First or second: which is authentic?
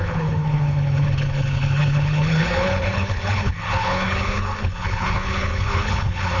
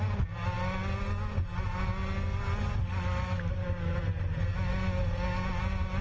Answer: second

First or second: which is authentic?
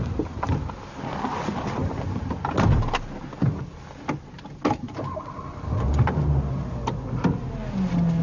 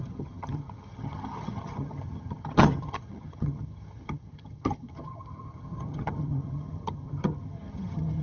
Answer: first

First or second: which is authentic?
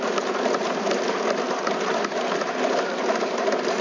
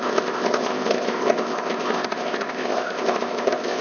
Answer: first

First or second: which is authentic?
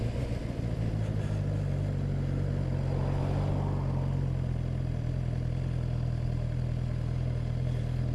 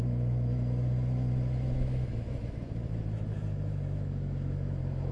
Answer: first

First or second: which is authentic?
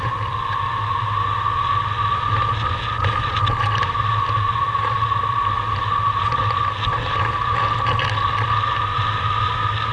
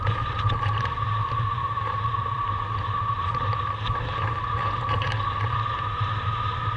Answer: first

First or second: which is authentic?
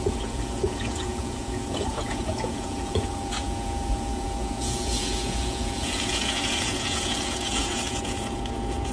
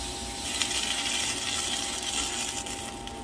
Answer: second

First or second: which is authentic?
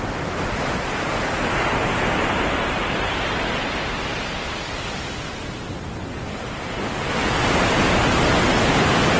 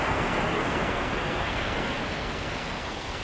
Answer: first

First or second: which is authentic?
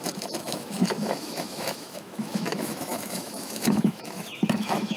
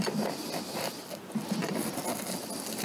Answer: second